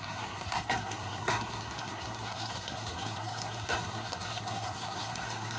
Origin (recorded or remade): remade